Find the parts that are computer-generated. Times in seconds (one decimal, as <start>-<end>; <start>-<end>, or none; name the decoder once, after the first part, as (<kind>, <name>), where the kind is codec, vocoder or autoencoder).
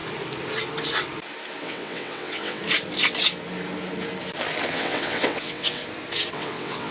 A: 1.6-2.6 (vocoder, WaveNeXt); 4.7-5.8; 6.3-6.9